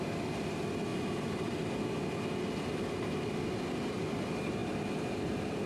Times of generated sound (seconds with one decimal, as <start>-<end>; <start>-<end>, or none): 0.9-1.6

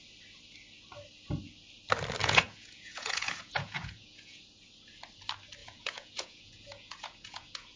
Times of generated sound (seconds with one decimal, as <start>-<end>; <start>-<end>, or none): 2.2-4.4; 5.6-7.8

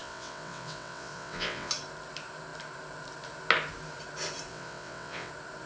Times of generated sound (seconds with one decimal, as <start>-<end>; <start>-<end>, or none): 0.0-1.7; 4.5-5.3

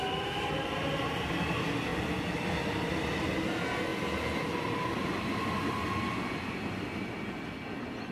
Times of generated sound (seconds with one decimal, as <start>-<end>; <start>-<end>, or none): none